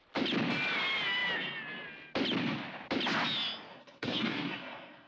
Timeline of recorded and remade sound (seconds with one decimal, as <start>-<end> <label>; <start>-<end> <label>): 0.0-3.7 recorded; 3.7-5.1 remade